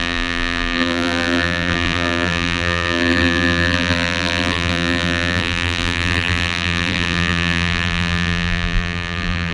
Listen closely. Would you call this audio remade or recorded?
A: remade